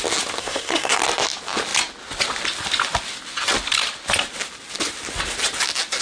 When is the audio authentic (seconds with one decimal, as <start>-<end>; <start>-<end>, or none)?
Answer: 0.0-0.4; 1.0-6.0